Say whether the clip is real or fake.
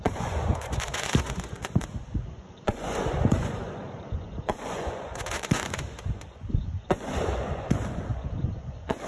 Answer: fake